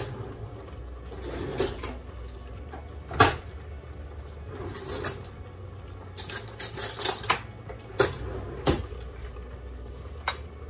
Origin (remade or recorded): recorded